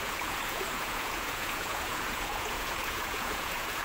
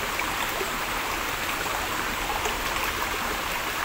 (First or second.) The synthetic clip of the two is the first